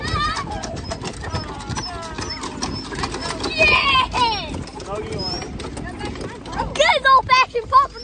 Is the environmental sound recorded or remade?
recorded